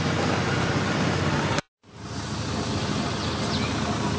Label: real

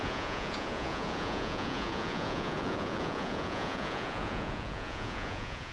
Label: fake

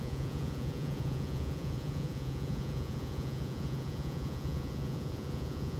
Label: fake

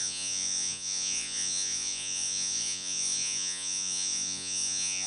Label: fake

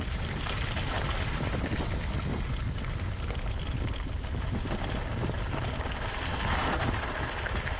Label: real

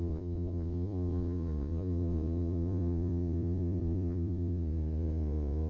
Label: fake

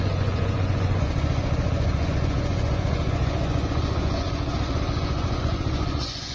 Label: fake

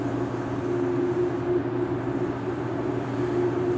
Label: real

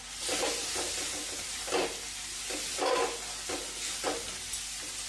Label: real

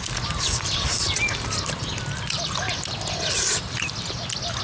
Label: real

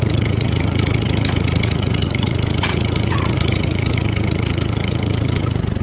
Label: fake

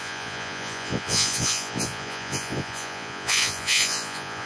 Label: fake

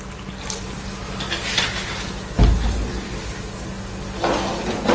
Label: real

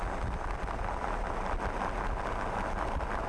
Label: real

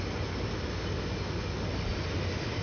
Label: real